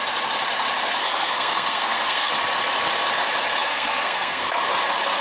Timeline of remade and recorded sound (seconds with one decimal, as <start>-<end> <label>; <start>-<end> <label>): 0.0-1.0 recorded; 1.0-2.3 remade; 2.3-3.6 recorded; 3.6-4.7 remade; 4.7-5.2 recorded